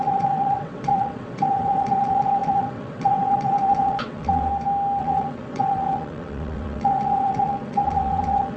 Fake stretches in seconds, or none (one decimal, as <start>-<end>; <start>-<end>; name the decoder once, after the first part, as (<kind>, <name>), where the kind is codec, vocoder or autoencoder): 0.0-4.5 (vocoder, WaveNeXt); 5.0-8.6